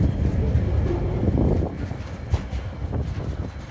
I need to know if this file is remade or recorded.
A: recorded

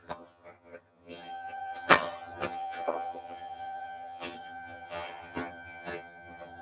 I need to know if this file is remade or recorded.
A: remade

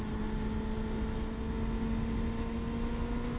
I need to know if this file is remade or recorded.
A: recorded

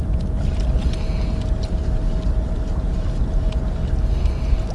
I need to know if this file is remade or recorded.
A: recorded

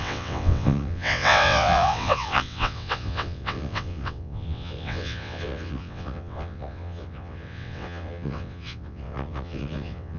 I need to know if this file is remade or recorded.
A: remade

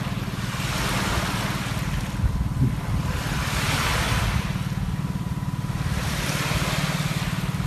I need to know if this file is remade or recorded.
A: recorded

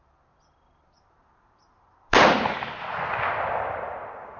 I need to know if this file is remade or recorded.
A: recorded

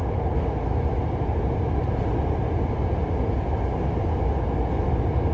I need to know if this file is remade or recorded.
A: recorded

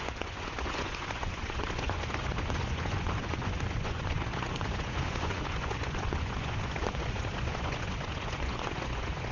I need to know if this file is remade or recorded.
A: remade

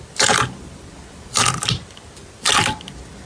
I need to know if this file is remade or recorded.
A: recorded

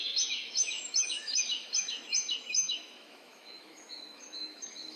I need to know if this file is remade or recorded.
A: remade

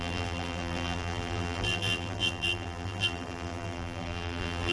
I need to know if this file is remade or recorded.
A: remade